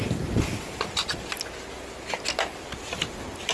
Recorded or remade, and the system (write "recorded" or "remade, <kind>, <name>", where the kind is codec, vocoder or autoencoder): recorded